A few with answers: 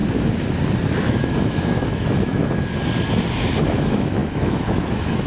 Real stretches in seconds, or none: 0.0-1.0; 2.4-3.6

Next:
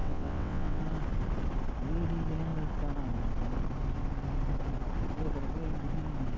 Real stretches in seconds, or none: 0.8-6.4